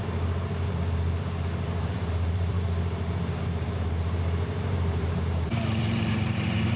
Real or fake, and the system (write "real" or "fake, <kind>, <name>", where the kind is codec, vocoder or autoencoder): fake, vocoder, BigVGAN v2